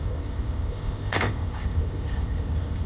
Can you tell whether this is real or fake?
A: fake